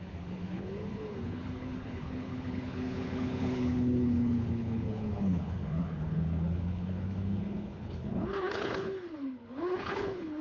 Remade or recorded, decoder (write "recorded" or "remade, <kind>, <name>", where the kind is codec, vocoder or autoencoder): remade, codec, HILCodec